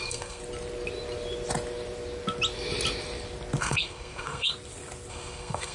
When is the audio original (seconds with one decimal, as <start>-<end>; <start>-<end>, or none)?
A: 0.4-3.6; 4.5-5.1